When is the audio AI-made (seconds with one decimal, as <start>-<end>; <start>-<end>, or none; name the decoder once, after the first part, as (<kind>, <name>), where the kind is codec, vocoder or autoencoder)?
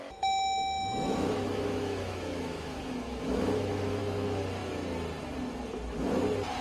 0.0-4.0 (autoencoder, DAC-VAE)